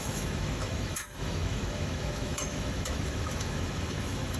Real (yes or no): no